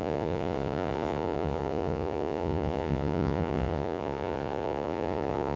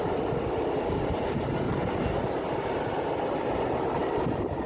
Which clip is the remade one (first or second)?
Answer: first